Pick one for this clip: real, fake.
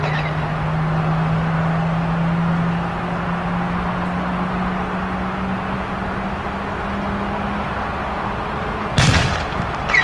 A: real